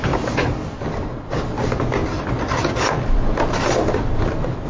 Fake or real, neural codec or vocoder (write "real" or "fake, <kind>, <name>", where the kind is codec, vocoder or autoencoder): real